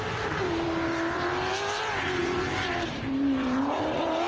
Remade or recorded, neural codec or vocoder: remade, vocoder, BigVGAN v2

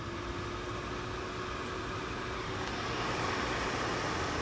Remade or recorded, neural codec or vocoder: recorded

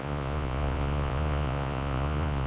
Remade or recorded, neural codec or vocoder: remade, vocoder, Vocos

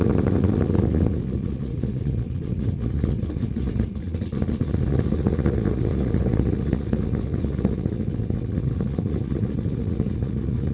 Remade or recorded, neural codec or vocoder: remade, vocoder, Vocos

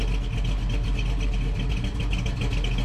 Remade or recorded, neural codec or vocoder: recorded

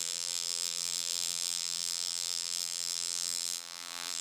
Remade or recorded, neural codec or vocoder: remade, vocoder, BigVGAN v2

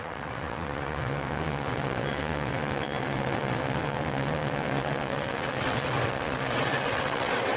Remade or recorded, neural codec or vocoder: remade, vocoder, WaveNeXt